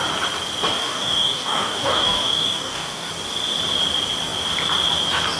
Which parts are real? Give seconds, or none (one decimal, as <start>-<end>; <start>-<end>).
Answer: 0.0-0.8; 3.1-5.4

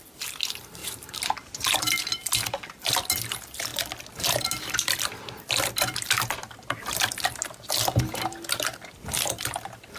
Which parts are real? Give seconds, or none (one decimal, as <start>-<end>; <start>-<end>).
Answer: 0.0-0.8; 1.9-10.0